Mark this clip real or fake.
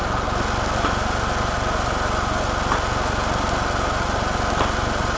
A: real